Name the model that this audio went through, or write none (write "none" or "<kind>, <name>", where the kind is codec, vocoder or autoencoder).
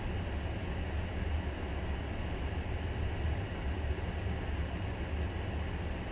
none